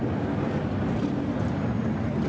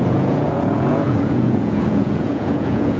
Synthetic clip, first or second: second